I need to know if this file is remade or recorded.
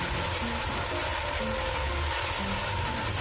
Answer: recorded